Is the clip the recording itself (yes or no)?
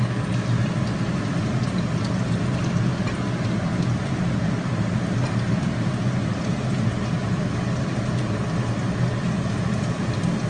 yes